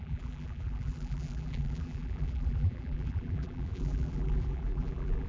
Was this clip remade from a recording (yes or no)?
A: yes